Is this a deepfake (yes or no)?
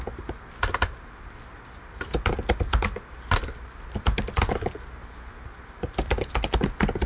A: no